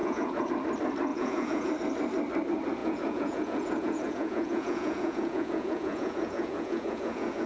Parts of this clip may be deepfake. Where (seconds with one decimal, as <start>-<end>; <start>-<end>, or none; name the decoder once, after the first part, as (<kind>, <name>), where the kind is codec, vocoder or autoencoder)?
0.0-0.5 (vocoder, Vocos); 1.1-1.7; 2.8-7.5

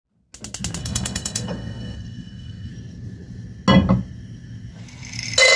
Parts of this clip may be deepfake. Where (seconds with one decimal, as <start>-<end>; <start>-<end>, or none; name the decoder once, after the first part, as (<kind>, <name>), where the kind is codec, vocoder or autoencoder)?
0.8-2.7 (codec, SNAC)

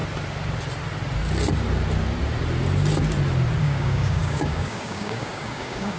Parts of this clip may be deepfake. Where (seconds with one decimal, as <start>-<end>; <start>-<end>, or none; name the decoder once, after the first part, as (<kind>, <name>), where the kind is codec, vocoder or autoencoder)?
3.6-6.0 (codec, DAC)